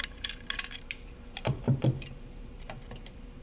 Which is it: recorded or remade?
remade